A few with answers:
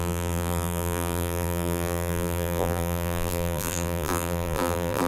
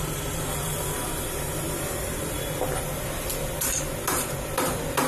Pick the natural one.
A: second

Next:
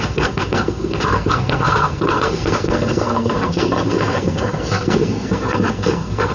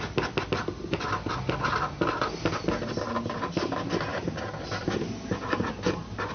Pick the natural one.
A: second